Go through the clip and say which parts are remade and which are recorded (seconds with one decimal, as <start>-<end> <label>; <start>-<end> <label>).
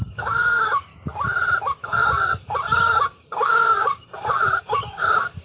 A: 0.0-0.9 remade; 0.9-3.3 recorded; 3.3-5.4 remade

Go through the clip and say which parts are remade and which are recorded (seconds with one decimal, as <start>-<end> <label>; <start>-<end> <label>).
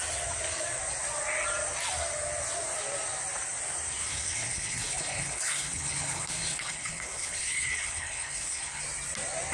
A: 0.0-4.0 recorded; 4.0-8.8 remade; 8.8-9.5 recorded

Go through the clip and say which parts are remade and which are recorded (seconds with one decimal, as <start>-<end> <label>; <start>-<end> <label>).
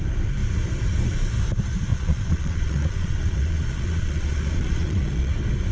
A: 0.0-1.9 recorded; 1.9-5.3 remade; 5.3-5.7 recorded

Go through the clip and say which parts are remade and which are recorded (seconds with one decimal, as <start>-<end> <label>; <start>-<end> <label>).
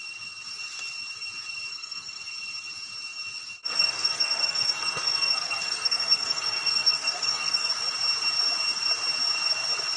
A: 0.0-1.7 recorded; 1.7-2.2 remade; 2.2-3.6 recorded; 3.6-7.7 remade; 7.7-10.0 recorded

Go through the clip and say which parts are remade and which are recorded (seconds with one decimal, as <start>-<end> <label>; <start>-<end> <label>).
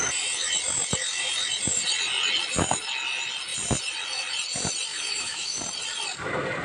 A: 0.0-4.9 recorded; 4.9-5.6 remade; 5.6-6.6 recorded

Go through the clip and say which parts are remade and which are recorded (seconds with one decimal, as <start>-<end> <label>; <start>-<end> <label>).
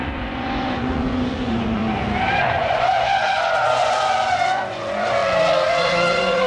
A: 0.0-1.8 remade; 1.8-2.4 recorded; 2.4-5.2 remade; 5.2-5.8 recorded; 5.8-6.5 remade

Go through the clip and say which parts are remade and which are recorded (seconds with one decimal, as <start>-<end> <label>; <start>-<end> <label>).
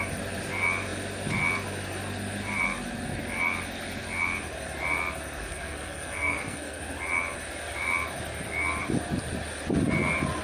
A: 0.0-5.5 recorded; 5.5-6.8 remade; 6.8-10.4 recorded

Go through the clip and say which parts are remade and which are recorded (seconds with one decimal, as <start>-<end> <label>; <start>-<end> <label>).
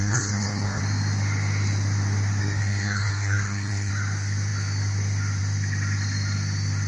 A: 0.0-0.8 remade; 0.8-2.4 recorded; 2.4-3.9 remade; 3.9-6.9 recorded